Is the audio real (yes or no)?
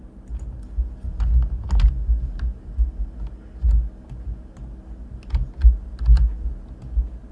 yes